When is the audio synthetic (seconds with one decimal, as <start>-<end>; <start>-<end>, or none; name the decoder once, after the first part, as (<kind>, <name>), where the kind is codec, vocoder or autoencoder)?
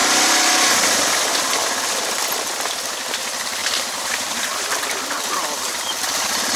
3.6-4.8 (vocoder, BigVGAN v2)